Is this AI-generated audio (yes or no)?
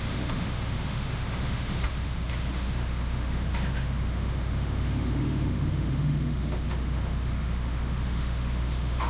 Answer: yes